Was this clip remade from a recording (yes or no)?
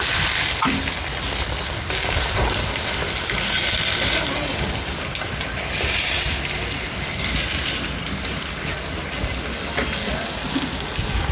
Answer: no